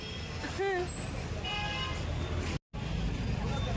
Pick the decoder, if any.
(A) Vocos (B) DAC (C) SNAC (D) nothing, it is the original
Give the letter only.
D